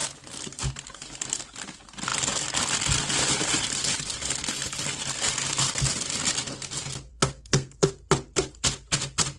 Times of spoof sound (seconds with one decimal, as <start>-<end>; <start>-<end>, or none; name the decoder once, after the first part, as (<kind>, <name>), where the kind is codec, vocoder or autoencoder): 7.1-7.9 (codec, SNAC)